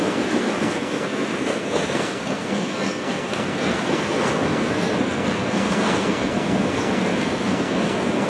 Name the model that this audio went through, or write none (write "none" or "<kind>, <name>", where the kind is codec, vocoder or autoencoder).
codec, SNAC